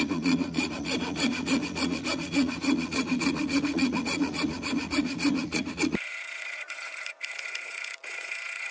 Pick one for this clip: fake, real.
fake